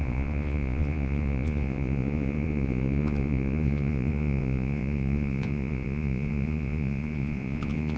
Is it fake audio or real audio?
fake